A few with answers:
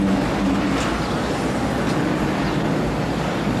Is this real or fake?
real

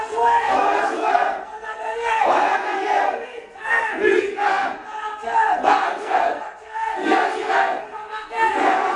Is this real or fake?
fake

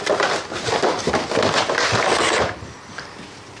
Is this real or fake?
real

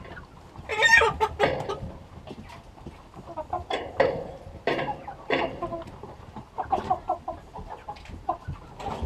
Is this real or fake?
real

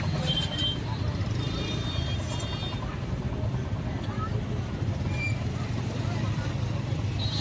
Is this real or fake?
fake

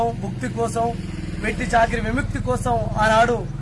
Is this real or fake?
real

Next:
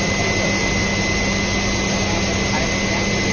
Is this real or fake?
real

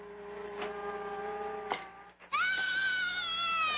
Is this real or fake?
real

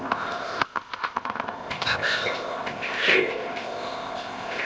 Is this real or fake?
fake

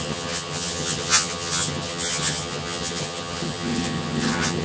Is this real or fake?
fake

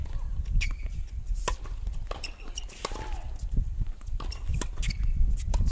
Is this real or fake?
real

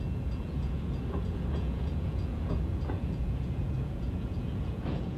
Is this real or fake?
fake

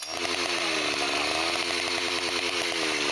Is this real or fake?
real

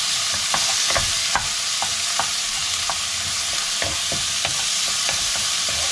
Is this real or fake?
real